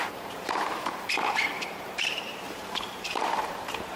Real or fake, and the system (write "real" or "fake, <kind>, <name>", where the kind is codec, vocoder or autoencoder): fake, vocoder, BigVGAN v2